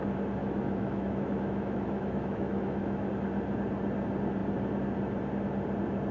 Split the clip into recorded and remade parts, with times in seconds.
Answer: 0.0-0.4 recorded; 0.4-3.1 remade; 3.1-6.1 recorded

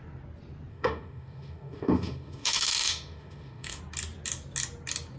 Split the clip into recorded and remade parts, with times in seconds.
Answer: 0.0-0.7 recorded; 0.7-3.8 remade; 3.8-5.2 recorded

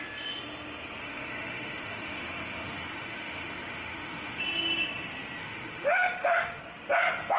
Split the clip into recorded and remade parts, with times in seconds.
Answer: 0.0-1.0 recorded; 1.0-4.4 remade; 4.4-5.4 recorded; 5.4-6.6 remade; 6.6-7.4 recorded

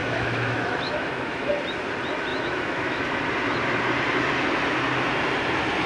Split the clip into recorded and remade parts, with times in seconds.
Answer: 0.0-1.5 remade; 1.5-2.3 recorded; 2.3-3.0 remade; 3.0-5.9 recorded

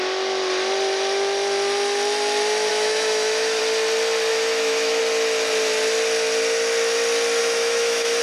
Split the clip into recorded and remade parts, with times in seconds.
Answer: 0.0-2.7 recorded; 2.7-3.6 remade; 3.6-4.3 recorded; 4.3-5.0 remade; 5.0-7.4 recorded; 7.4-8.2 remade